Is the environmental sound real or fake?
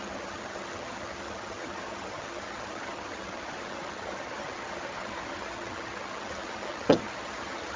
fake